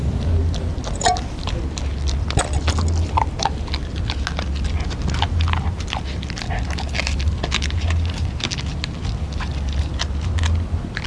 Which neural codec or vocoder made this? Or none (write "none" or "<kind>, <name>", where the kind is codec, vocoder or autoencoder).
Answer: none